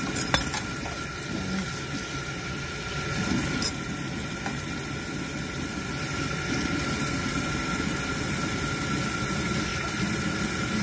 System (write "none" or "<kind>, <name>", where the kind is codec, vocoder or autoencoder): none